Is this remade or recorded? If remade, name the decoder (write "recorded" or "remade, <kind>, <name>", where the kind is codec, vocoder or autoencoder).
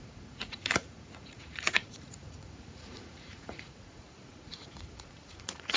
remade, vocoder, Vocos